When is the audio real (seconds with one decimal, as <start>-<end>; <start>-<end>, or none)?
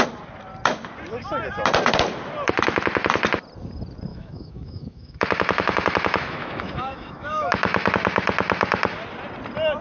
0.0-4.1; 7.9-9.8